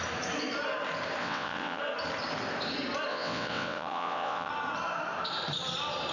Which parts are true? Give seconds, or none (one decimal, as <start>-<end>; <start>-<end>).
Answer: 0.0-1.2; 1.8-3.1; 4.5-6.1